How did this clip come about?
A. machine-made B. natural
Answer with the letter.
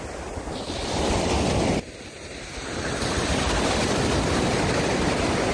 B